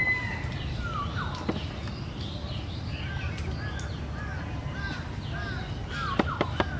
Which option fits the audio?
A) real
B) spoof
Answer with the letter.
A